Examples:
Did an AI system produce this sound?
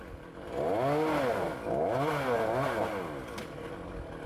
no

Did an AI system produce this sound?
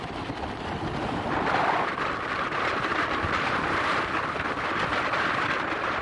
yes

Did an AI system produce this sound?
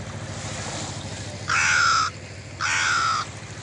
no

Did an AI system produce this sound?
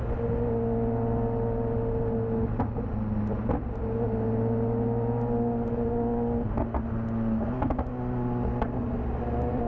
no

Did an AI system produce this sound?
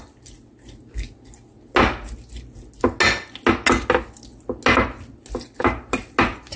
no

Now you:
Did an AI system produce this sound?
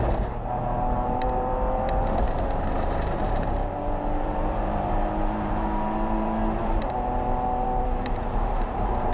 yes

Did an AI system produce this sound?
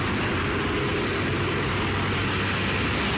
no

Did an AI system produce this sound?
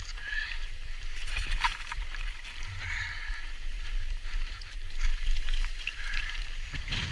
yes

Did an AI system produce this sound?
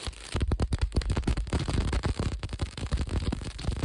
yes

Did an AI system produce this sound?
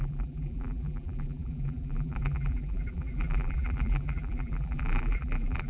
yes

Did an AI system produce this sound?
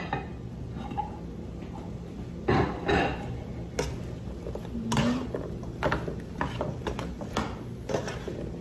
no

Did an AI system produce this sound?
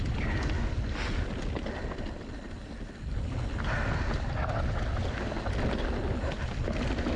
no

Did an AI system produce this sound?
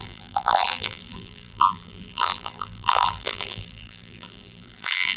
yes